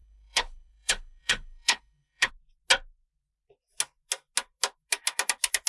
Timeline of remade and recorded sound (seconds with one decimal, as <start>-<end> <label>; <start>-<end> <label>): 0.0-2.3 remade; 2.3-5.7 recorded